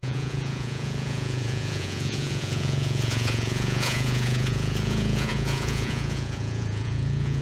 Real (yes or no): no